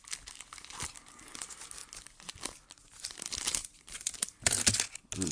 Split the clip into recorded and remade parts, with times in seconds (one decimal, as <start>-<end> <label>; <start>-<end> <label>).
0.0-3.6 recorded; 3.6-4.6 remade; 4.6-5.3 recorded